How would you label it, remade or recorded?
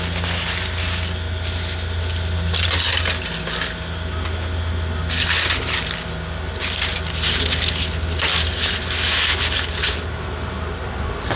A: recorded